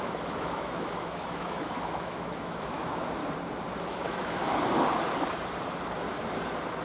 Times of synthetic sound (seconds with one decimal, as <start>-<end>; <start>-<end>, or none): 0.0-3.2; 3.8-4.5